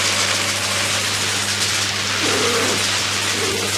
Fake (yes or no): no